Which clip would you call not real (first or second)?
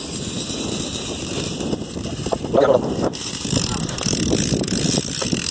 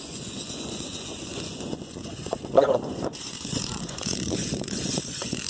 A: second